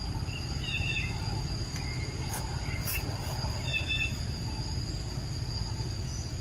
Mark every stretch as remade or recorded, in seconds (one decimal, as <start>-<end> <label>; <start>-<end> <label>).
0.0-0.5 remade; 0.5-6.4 recorded